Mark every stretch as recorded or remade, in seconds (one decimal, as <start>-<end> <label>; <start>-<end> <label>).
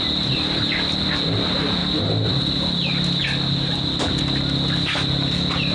0.0-5.7 recorded